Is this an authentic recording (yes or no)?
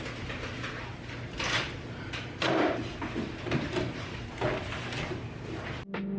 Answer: yes